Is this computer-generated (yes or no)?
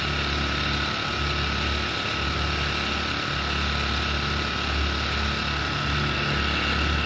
no